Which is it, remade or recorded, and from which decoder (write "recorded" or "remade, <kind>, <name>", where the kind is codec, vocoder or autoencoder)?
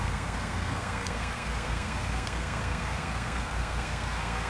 remade, codec, SNAC